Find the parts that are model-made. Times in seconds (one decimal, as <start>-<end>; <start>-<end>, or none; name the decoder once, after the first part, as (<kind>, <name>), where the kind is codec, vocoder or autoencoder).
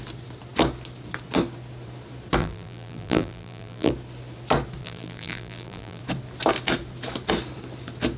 2.4-3.9 (vocoder, BigVGAN v2); 4.8-6.0